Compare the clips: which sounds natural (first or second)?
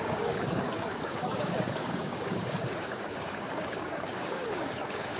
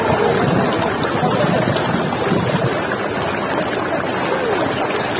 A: second